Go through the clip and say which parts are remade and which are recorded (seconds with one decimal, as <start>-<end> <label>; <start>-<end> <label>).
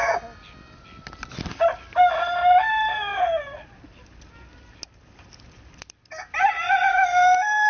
0.0-6.9 recorded; 6.9-7.7 remade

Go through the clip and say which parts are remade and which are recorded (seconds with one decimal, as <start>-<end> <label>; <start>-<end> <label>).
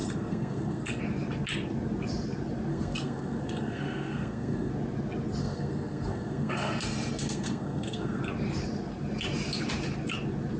0.0-1.0 remade; 1.0-2.7 recorded; 2.7-4.7 remade; 4.7-5.4 recorded; 5.4-8.2 remade; 8.2-10.6 recorded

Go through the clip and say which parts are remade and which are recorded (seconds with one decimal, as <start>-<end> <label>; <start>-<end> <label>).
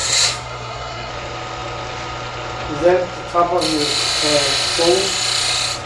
0.0-1.1 remade; 1.1-5.9 recorded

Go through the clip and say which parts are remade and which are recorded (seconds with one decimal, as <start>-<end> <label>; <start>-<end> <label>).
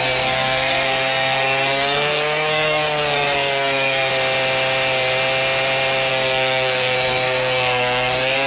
0.0-4.1 remade; 4.1-6.1 recorded; 6.1-8.5 remade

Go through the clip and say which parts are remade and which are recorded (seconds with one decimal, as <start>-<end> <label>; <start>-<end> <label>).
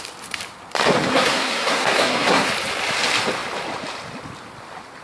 0.0-1.1 recorded; 1.1-2.5 remade; 2.5-5.0 recorded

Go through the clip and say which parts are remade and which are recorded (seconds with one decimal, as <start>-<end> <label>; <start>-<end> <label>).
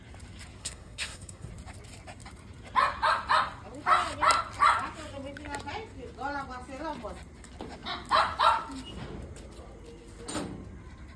0.0-0.6 recorded; 0.6-1.5 remade; 1.5-11.2 recorded